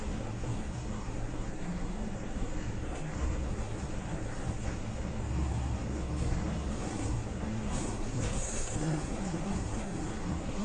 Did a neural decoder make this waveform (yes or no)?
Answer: yes